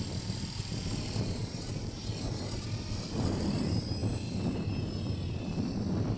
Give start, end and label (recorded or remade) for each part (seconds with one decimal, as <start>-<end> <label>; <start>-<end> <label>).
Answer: 0.0-1.4 recorded; 1.4-2.3 remade; 2.3-6.2 recorded